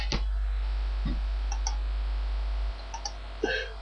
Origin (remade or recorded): recorded